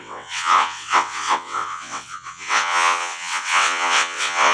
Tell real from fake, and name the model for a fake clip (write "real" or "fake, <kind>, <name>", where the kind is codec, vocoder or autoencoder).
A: fake, vocoder, WaveNeXt